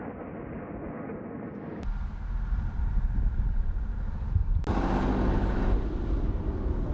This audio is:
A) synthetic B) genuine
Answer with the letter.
B